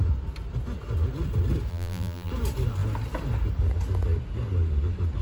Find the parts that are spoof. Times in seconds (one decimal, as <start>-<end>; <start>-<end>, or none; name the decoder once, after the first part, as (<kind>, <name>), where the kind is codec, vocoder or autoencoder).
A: 1.7-2.3 (vocoder, BigVGAN v2)